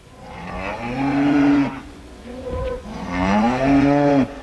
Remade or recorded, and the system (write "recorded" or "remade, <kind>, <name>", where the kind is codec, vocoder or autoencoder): remade, vocoder, Vocos